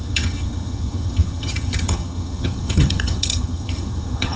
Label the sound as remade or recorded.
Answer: remade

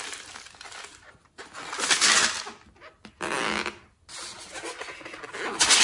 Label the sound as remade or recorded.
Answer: recorded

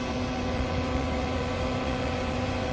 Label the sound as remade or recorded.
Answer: remade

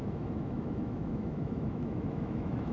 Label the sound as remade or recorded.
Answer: remade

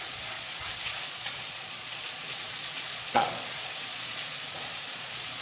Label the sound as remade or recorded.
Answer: remade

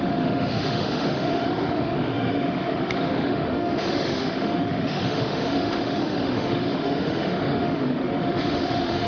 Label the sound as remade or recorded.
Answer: remade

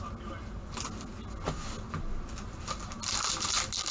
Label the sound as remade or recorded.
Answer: recorded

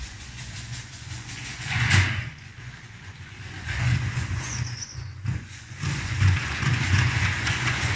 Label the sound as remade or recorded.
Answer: remade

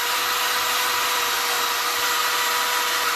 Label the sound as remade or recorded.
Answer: recorded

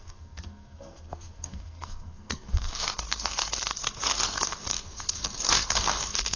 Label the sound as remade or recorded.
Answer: remade